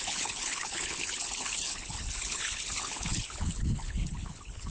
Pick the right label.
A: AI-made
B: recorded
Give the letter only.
A